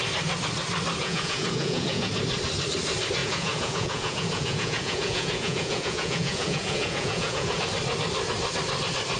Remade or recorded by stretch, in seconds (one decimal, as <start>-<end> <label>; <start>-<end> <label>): 0.0-1.0 recorded; 1.0-2.1 remade; 2.1-3.2 recorded; 3.2-7.6 remade; 7.6-9.2 recorded